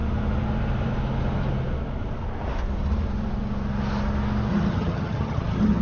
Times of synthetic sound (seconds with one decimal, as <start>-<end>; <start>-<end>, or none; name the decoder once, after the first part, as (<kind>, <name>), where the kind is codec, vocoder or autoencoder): 4.5-5.8 (vocoder, HiFi-GAN)